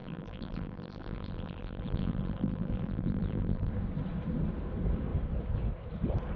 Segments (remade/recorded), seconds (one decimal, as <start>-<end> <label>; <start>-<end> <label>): 0.0-3.7 remade; 3.7-6.4 recorded